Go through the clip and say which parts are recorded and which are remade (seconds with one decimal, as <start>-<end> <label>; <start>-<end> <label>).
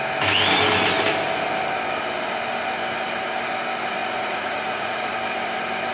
0.0-4.0 recorded; 4.0-5.1 remade; 5.1-5.9 recorded